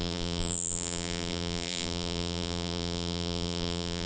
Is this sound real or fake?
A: fake